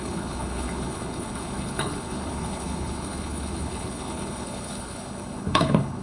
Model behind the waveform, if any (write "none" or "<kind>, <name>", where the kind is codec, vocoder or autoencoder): codec, HILCodec